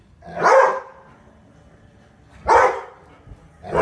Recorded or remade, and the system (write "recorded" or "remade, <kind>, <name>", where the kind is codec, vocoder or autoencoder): recorded